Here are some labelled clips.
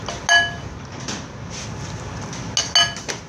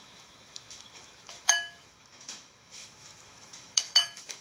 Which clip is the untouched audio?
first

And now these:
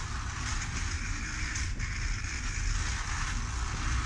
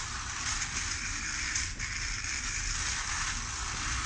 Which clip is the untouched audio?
first